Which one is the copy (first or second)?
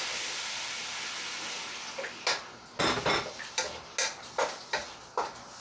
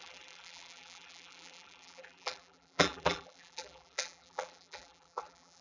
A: second